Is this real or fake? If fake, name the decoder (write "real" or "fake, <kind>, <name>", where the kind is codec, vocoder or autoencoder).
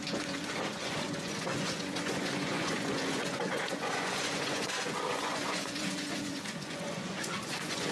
fake, vocoder, Vocos